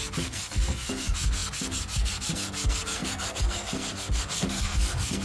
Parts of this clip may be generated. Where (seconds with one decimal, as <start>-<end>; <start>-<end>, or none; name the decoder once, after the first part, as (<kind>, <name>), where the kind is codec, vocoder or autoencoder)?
0.0-5.2 (codec, SNAC)

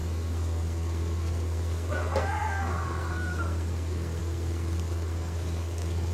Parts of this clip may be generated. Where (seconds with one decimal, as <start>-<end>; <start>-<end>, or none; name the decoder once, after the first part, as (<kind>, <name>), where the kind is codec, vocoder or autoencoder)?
0.0-6.1 (codec, SNAC)

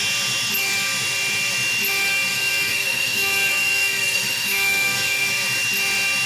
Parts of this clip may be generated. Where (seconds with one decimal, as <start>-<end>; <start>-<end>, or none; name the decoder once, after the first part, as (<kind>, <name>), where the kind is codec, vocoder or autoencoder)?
2.3-5.3 (codec, SNAC)

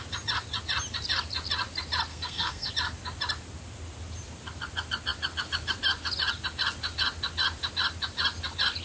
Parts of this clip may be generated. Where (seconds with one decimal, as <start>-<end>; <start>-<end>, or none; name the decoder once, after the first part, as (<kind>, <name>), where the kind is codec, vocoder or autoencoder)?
2.1-2.7 (codec, SNAC)

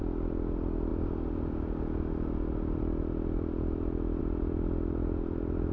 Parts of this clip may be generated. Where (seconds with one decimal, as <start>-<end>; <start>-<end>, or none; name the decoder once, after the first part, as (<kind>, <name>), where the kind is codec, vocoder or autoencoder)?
none

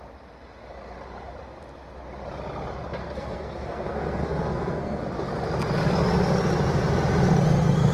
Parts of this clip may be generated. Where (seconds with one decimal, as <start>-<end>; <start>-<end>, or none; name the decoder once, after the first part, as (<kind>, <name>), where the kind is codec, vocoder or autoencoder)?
3.0-5.0 (codec, SNAC)